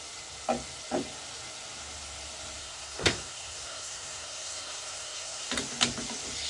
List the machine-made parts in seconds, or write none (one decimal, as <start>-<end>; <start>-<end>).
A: 2.6-5.5